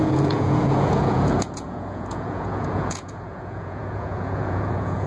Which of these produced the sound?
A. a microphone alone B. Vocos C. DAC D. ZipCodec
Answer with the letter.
B